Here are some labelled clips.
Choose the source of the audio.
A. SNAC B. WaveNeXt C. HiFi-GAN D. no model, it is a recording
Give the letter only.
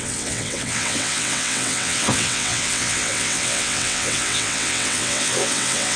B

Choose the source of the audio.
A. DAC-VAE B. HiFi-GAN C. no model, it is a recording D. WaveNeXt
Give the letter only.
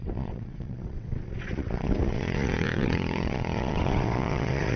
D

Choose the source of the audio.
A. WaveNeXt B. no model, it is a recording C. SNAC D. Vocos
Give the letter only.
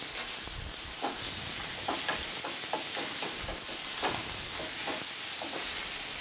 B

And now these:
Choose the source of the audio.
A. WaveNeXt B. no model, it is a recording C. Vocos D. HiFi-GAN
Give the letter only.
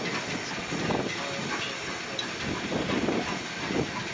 B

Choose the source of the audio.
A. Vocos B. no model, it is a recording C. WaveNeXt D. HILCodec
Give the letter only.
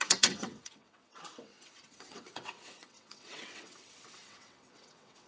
C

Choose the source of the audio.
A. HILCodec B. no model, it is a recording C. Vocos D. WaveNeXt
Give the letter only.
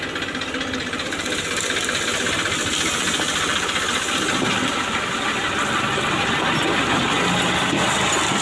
B